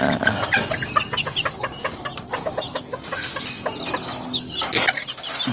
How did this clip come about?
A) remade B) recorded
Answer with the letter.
B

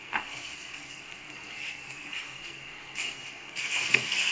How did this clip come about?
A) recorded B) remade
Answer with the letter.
B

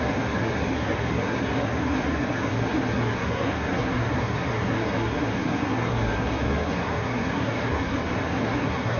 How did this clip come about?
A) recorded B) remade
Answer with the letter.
B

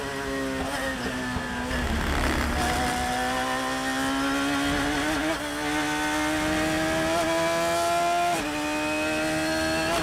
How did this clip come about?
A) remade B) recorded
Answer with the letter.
B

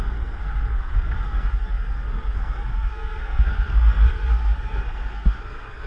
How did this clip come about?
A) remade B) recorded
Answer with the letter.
A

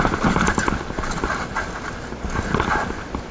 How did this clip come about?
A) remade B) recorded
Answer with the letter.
B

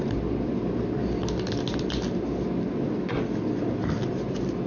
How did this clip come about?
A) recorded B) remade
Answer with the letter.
A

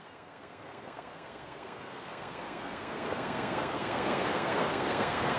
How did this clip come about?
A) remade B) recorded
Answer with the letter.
A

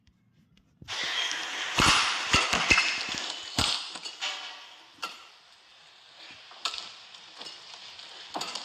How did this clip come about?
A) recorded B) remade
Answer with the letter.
A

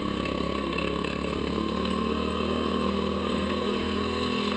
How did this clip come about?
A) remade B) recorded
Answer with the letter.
A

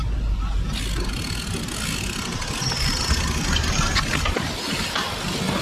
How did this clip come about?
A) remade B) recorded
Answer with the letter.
B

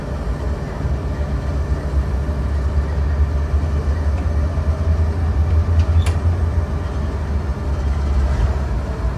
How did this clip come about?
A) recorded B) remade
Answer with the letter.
A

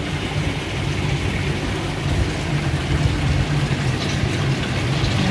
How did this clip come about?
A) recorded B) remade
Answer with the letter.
A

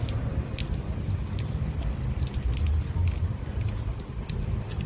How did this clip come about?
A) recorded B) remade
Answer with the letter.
A